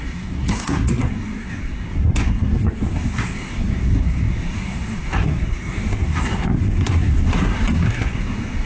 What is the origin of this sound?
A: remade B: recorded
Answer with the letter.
A